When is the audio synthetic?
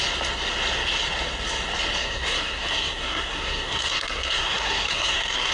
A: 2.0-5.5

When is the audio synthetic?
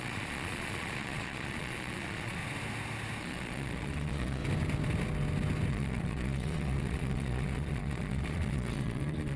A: 0.0-2.4; 3.2-4.4; 5.7-9.4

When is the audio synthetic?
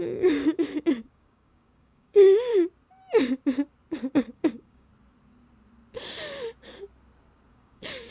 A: 0.0-2.5; 4.0-4.9; 7.5-8.1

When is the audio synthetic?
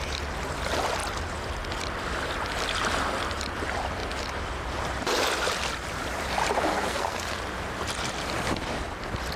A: 6.7-7.4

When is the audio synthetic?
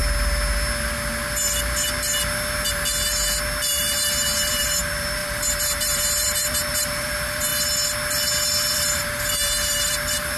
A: 3.7-7.5; 8.7-10.4